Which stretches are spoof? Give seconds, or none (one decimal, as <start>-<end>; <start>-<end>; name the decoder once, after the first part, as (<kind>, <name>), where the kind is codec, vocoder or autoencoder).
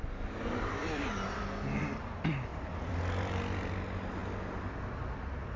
0.8-1.4 (vocoder, BigVGAN v2); 2.5-3.4